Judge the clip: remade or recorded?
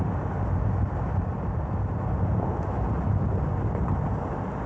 recorded